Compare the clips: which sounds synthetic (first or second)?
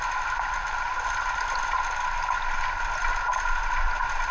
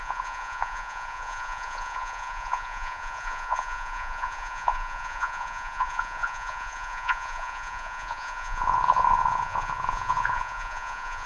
second